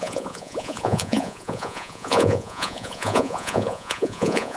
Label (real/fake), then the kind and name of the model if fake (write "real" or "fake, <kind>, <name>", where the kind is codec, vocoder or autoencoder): fake, vocoder, Vocos